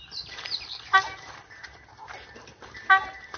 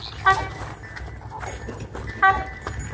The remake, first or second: first